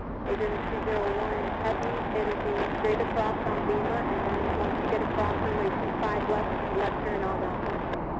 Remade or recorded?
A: recorded